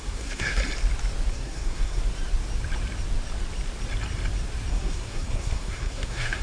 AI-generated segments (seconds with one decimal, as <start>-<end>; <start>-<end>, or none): 0.0-0.6; 1.3-2.0; 4.7-6.4